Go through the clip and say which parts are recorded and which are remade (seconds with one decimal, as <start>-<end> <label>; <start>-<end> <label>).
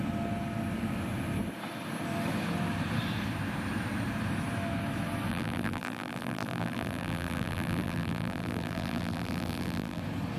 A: 0.0-5.3 recorded; 5.3-10.0 remade; 10.0-10.4 recorded